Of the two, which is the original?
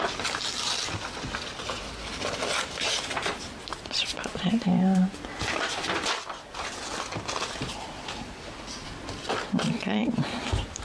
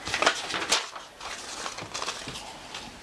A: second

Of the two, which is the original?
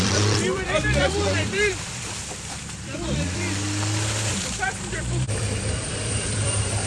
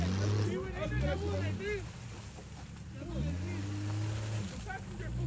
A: second